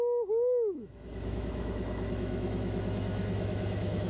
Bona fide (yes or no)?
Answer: no